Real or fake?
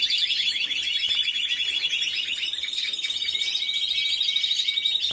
real